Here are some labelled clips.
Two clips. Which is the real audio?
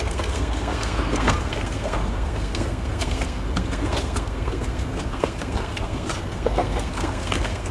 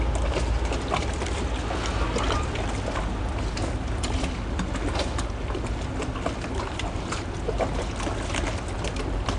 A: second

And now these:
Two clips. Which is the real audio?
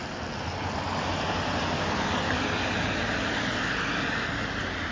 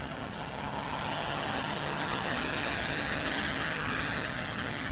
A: first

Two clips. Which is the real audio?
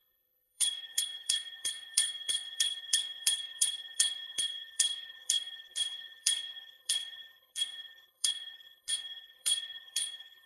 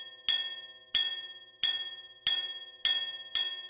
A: second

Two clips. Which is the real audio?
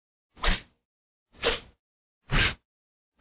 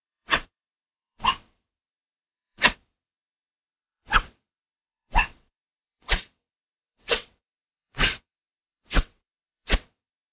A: first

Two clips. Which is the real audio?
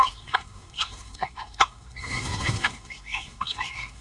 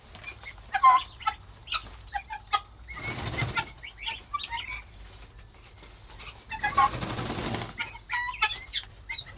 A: second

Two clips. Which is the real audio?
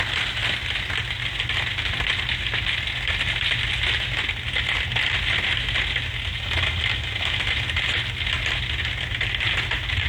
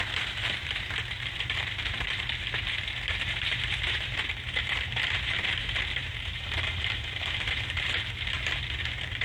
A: first